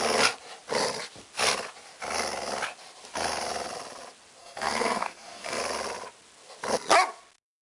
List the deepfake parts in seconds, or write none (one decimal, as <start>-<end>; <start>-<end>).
4.4-5.6